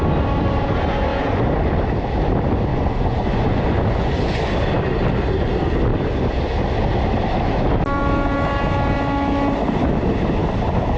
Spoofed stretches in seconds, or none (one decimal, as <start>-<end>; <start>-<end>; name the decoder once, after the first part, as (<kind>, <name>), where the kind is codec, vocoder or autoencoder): 2.7-4.4 (vocoder, Vocos)